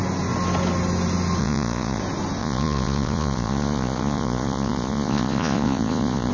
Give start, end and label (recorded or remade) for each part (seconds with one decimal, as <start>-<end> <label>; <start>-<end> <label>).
0.0-1.4 recorded; 1.4-2.0 remade; 2.0-2.4 recorded; 2.4-6.3 remade